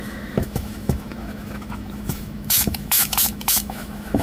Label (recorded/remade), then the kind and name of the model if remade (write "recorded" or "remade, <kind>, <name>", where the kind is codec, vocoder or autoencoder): remade, autoencoder, DAC-VAE